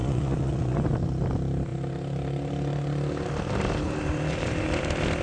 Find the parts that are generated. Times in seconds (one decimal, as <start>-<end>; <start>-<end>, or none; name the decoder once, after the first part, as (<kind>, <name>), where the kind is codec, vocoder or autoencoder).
0.0-0.9 (vocoder, Vocos)